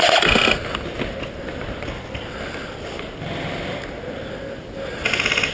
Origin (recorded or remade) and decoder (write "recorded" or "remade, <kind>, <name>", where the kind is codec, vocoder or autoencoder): recorded